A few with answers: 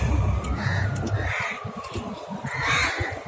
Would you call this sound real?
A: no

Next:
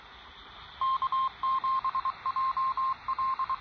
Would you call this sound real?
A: yes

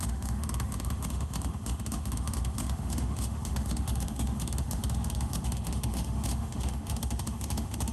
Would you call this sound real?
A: no